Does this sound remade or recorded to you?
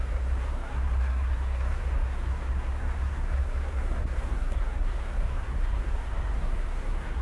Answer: remade